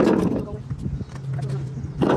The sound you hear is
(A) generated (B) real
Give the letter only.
B